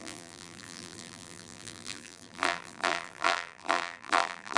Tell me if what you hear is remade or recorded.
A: remade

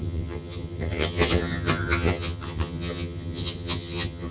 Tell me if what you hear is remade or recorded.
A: remade